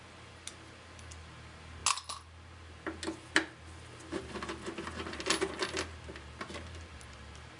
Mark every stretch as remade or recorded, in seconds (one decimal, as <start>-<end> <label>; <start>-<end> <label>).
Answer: 0.0-7.6 recorded